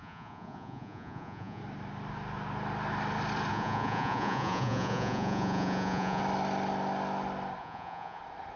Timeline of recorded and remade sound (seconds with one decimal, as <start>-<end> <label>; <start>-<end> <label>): 0.0-1.6 remade; 1.6-3.5 recorded; 3.5-6.2 remade; 6.2-7.6 recorded; 7.6-8.2 remade; 8.2-8.6 recorded